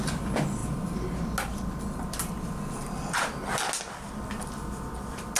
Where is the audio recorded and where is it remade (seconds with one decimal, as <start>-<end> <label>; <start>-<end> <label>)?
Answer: 0.0-5.4 recorded